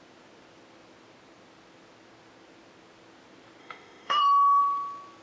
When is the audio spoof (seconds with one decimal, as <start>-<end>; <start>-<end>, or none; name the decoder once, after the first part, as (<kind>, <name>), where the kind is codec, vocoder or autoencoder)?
3.6-4.6 (autoencoder, DAC-VAE)